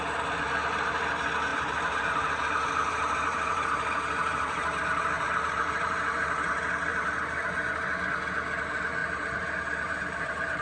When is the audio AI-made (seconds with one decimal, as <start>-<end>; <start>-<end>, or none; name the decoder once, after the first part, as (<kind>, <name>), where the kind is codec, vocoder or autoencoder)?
1.5-6.5 (vocoder, BigVGAN v2); 6.9-8.0; 9.0-10.6